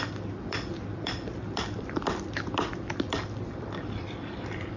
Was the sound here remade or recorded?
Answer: remade